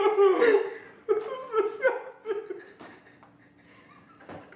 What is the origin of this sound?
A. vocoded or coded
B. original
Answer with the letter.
B